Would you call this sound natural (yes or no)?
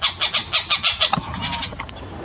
yes